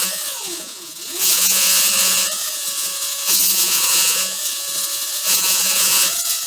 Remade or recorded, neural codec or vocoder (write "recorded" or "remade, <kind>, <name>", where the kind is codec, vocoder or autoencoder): remade, vocoder, Vocos